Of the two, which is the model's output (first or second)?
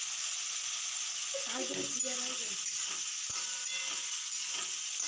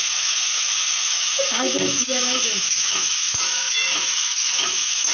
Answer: second